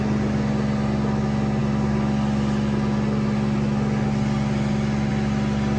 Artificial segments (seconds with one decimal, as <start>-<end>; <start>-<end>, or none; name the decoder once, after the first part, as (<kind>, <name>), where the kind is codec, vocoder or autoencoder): none